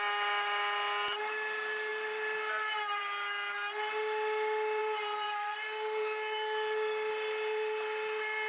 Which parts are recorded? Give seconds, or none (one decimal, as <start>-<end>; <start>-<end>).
0.0-1.9; 3.0-4.8